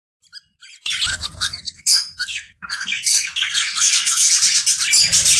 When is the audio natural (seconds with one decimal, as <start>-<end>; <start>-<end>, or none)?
0.0-1.1; 4.3-5.4